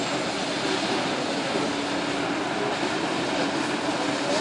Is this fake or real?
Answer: real